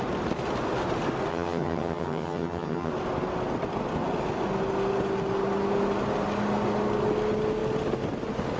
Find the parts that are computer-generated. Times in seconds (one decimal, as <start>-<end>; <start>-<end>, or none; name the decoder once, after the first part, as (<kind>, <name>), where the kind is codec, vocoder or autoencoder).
1.3-2.9 (vocoder, HiFi-GAN)